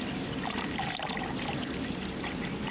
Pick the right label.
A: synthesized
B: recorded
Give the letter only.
B